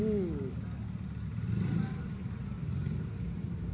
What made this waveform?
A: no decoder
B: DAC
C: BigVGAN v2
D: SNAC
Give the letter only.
A